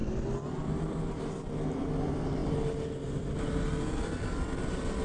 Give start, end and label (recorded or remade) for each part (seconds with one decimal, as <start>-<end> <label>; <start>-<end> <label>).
0.0-5.0 recorded